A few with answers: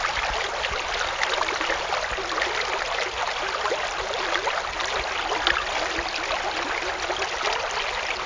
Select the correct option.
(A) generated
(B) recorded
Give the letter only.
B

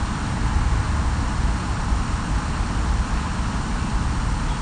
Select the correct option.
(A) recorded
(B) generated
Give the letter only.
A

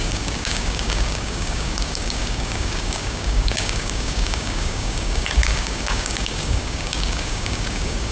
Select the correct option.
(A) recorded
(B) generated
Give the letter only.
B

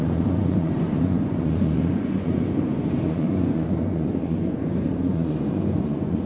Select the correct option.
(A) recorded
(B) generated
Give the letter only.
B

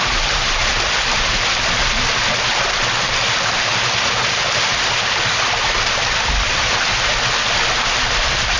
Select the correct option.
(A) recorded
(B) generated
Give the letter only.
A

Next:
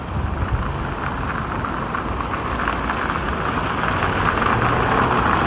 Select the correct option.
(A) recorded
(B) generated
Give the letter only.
A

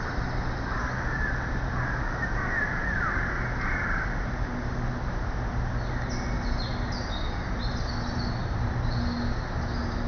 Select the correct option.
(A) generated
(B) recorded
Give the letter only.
B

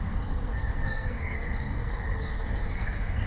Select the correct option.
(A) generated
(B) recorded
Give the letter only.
A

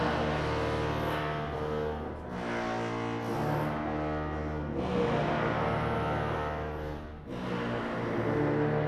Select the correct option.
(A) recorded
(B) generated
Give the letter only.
A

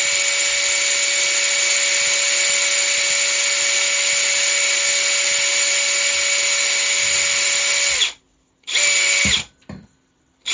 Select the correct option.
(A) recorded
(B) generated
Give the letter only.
A